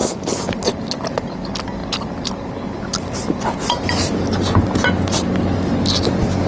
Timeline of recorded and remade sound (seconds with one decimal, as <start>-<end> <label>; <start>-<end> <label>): 0.0-6.5 recorded